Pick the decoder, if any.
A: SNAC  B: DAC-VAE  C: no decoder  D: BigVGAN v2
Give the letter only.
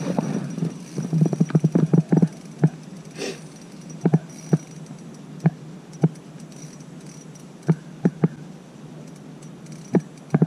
C